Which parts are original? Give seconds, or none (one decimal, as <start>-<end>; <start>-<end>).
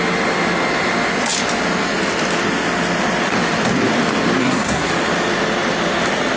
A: 0.0-4.4; 4.9-6.4